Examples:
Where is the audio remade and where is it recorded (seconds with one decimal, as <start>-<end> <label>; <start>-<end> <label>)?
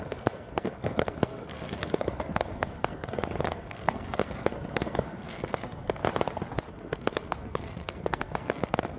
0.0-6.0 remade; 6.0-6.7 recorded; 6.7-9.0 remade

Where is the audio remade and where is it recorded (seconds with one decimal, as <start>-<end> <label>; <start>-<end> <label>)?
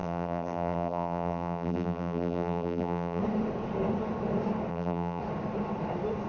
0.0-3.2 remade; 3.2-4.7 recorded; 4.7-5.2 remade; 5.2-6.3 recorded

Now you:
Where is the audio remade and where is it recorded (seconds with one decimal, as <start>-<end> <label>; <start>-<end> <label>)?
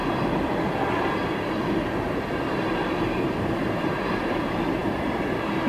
0.0-2.7 recorded; 2.7-5.7 remade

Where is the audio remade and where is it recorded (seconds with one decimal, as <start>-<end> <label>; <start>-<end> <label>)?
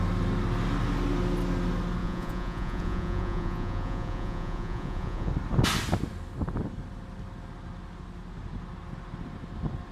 0.0-2.0 recorded; 2.0-5.3 remade; 5.3-9.9 recorded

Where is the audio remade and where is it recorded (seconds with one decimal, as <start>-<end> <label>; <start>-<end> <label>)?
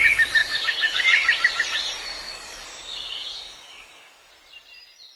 0.0-0.4 recorded; 0.4-1.0 remade; 1.0-2.1 recorded; 2.1-4.3 remade; 4.3-5.2 recorded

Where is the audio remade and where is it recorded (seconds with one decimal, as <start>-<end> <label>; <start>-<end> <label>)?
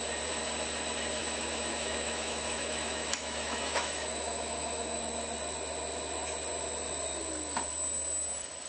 0.0-1.2 recorded; 1.2-5.0 remade; 5.0-8.7 recorded